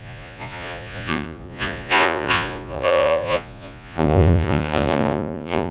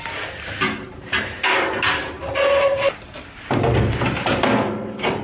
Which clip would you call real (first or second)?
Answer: second